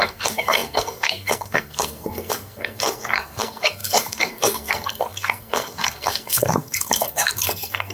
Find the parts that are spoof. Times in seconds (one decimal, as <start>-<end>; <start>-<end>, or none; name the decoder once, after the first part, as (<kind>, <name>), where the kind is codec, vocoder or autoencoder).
0.0-7.9 (codec, SNAC)